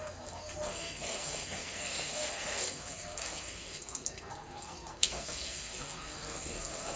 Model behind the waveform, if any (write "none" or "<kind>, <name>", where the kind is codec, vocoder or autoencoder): codec, SNAC